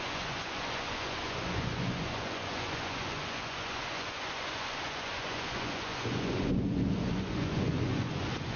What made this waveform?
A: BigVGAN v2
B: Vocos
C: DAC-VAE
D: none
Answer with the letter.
B